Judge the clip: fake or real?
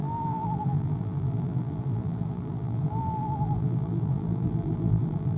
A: fake